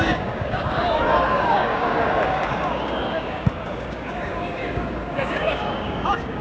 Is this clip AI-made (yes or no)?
yes